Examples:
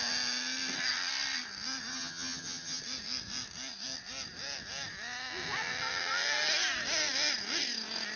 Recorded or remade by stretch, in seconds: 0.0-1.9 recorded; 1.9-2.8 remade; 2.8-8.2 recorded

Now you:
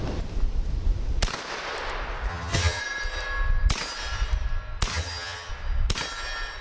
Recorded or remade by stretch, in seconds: 0.0-2.3 recorded; 2.3-2.8 remade; 2.8-4.9 recorded; 4.9-5.5 remade; 5.5-6.6 recorded

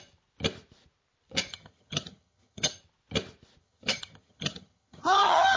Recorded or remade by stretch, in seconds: 0.0-1.5 recorded; 1.5-2.8 remade; 2.8-3.6 recorded; 3.6-5.6 remade

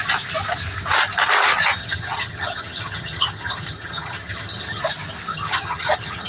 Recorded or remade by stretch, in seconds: 0.0-1.8 recorded; 1.8-4.8 remade; 4.8-5.3 recorded; 5.3-6.3 remade

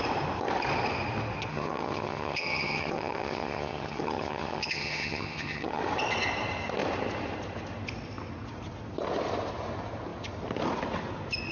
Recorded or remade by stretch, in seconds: 0.0-1.5 recorded; 1.5-5.8 remade; 5.8-11.5 recorded